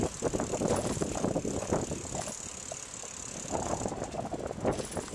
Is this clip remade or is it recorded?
recorded